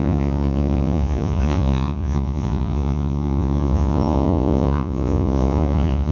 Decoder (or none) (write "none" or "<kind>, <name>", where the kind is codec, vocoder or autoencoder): vocoder, Vocos